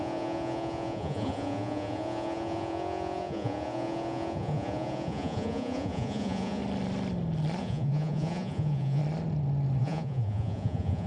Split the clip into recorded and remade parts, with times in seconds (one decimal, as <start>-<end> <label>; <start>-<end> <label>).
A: 0.0-6.6 remade; 6.6-7.6 recorded; 7.6-9.0 remade; 9.0-9.8 recorded; 9.8-11.1 remade